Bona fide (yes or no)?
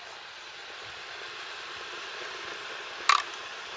yes